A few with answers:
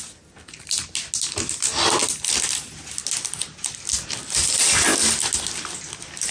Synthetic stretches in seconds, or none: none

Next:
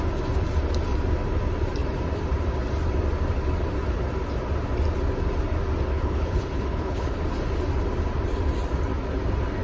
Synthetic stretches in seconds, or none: 5.9-7.2 (codec, HILCodec)

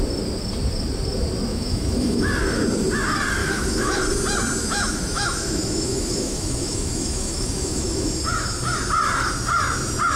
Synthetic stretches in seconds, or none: 1.5-2.3 (autoencoder, DAC-VAE); 3.4-4.0; 4.6-8.1

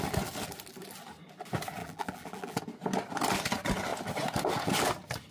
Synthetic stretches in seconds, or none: 1.8-2.6 (vocoder, BigVGAN v2)

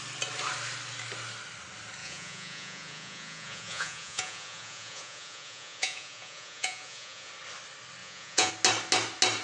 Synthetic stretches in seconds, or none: 2.0-7.3 (vocoder, Vocos); 8.0-8.5

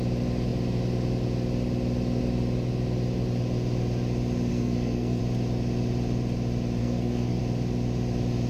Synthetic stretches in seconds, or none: 4.5-5.2 (codec, SNAC); 6.8-7.4